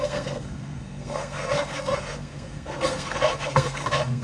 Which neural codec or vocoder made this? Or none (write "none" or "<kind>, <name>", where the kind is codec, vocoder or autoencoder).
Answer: codec, SNAC